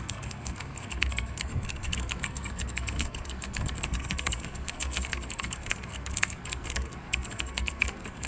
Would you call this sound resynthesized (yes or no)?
yes